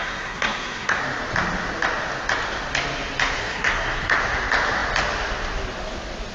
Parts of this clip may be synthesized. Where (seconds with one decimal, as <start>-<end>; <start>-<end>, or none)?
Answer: 0.0-1.0; 3.4-4.2